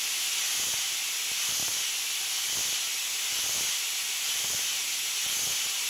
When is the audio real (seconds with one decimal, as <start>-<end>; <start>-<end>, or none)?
0.0-5.9